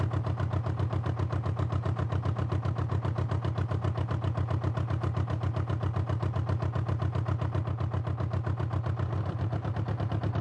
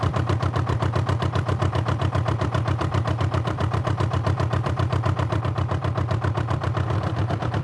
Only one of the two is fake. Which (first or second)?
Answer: second